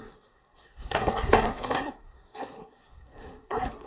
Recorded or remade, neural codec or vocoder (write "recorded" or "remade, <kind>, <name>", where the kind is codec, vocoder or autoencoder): remade, codec, SNAC